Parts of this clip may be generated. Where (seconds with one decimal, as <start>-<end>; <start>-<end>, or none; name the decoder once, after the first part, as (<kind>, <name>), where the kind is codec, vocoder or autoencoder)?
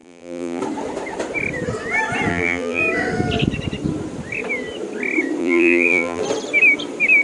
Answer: 0.0-0.6 (vocoder, BigVGAN v2); 2.3-2.8; 5.4-6.2